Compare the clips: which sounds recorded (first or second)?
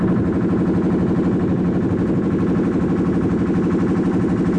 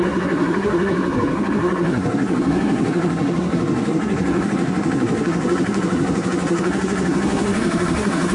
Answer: first